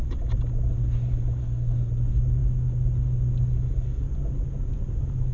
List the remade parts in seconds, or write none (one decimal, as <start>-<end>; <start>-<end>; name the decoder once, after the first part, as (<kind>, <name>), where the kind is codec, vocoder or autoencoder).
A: 1.4-1.9 (codec, SNAC)